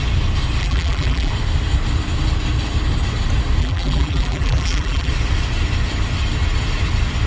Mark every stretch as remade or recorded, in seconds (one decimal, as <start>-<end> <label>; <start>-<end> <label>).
0.0-0.6 recorded; 0.6-1.3 remade; 1.3-3.6 recorded; 3.6-5.1 remade; 5.1-7.3 recorded